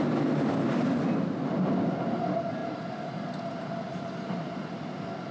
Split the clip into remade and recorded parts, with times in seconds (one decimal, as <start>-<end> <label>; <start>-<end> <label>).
0.0-5.3 recorded

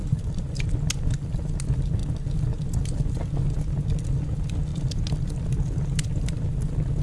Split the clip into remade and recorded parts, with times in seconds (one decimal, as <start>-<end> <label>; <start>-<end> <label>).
0.0-0.7 remade; 0.7-7.0 recorded

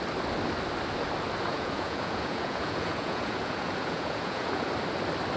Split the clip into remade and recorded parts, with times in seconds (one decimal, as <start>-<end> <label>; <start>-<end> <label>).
0.0-1.5 recorded; 1.5-4.7 remade; 4.7-5.4 recorded

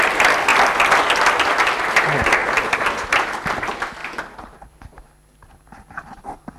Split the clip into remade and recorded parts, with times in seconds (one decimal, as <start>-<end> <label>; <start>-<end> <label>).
0.0-6.6 recorded